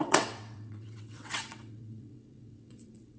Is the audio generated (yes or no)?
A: yes